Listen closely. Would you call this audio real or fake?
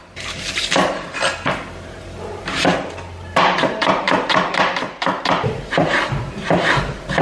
fake